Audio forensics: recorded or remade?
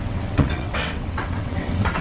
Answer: remade